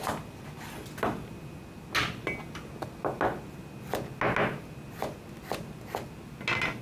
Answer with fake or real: real